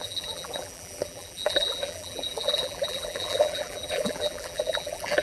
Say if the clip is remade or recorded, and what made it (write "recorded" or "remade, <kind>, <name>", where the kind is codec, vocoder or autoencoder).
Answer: remade, vocoder, BigVGAN v2